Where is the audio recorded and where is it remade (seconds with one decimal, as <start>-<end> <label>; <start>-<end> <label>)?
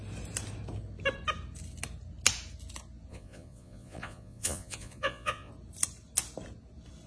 0.0-3.1 recorded; 3.1-5.5 remade; 5.5-7.1 recorded